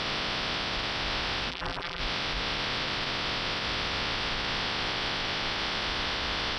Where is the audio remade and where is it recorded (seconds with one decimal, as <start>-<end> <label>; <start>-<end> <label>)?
0.0-1.5 recorded; 1.5-2.0 remade; 2.0-6.6 recorded